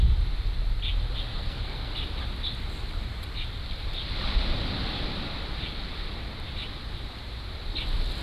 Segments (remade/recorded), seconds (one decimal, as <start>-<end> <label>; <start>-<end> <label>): 0.0-1.3 recorded; 1.3-1.9 remade; 1.9-8.2 recorded